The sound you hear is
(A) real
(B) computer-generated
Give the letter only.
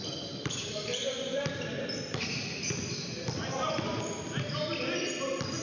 A